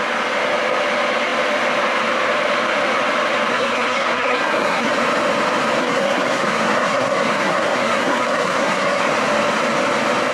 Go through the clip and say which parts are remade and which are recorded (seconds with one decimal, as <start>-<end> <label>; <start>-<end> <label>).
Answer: 0.0-3.5 recorded; 3.5-4.9 remade; 4.9-5.8 recorded; 5.8-9.0 remade; 9.0-10.3 recorded